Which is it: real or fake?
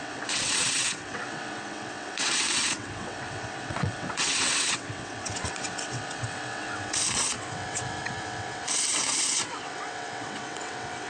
fake